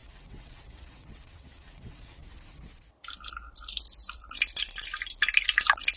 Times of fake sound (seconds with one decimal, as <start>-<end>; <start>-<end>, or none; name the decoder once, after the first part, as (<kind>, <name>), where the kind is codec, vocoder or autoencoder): 0.0-2.2 (vocoder, WaveNeXt)